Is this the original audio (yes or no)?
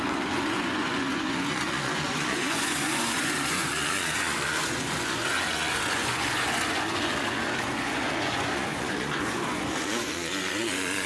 no